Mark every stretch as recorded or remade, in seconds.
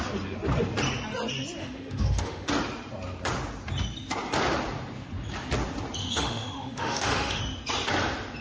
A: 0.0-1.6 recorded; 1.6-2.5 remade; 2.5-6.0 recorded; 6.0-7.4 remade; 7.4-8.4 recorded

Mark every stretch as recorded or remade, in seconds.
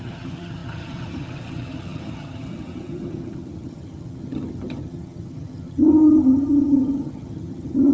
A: 0.0-7.9 remade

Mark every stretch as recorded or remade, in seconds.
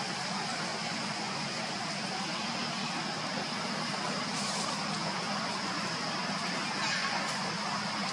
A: 0.0-0.7 recorded; 0.7-1.7 remade; 1.7-5.0 recorded; 5.0-5.9 remade; 5.9-7.0 recorded; 7.0-7.5 remade; 7.5-8.1 recorded